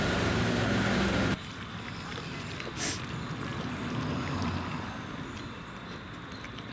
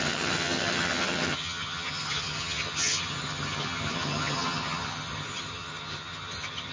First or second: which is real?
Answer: first